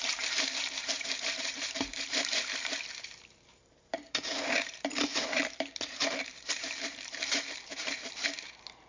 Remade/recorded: remade